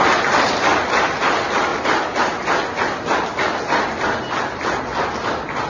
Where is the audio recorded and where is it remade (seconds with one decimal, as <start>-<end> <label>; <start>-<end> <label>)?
0.0-5.7 recorded